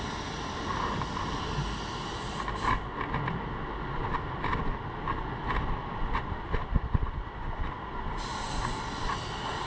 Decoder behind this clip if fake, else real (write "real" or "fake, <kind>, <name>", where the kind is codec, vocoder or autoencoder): real